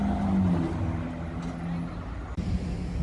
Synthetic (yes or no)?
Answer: no